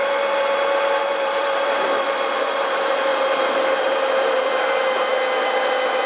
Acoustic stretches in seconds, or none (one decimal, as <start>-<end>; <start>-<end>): 0.0-1.0; 5.1-6.1